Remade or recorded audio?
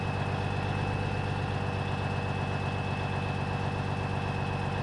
recorded